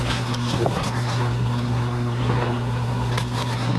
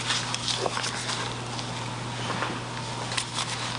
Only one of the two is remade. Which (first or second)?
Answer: first